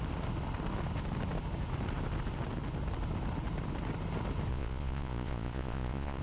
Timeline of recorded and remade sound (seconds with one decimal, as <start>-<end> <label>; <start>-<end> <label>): 0.0-4.5 recorded; 4.5-6.2 remade